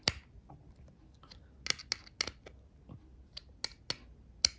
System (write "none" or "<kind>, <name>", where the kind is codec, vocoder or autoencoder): none